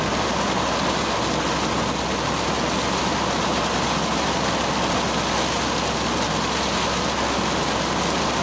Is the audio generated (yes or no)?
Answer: no